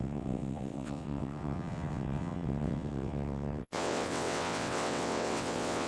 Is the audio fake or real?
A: fake